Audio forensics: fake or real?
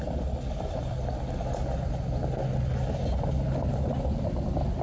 real